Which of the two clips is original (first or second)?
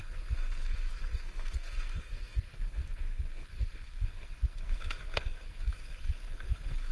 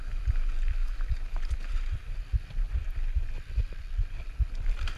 second